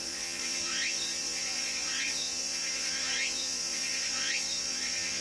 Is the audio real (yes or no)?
no